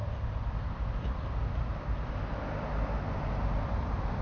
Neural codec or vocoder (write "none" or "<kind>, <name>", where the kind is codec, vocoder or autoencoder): none